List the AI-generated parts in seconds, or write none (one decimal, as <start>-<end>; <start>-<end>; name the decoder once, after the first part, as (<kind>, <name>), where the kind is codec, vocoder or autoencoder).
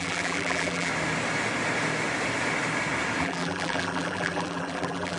0.0-0.9 (vocoder, BigVGAN v2); 3.2-5.2